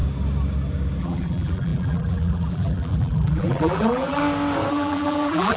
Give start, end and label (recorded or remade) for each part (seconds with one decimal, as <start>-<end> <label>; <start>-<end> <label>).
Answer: 0.0-1.0 recorded; 1.0-4.2 remade; 4.2-4.7 recorded; 4.7-5.6 remade

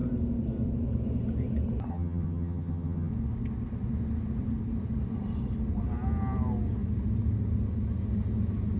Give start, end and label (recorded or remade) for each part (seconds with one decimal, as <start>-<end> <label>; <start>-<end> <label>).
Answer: 0.0-1.9 recorded; 1.9-3.1 remade; 3.1-8.8 recorded